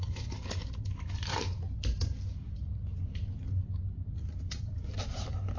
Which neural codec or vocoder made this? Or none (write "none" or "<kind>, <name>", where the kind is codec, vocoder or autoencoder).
vocoder, BigVGAN v2